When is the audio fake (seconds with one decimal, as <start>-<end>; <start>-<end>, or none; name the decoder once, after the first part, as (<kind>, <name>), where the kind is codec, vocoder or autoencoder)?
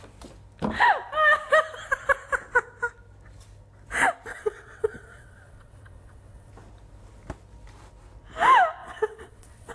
4.3-6.5 (vocoder, WaveNeXt); 8.8-9.7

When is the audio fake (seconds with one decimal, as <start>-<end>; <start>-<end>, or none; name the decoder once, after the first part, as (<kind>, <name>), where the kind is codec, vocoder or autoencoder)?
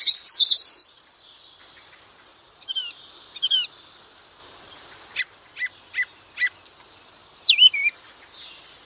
2.3-3.1 (vocoder, BigVGAN v2); 4.4-5.2; 7.2-8.2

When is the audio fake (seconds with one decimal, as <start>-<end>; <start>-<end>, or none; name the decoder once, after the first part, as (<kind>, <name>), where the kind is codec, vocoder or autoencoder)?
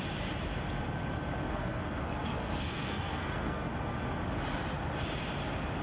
1.5-3.7 (codec, SNAC)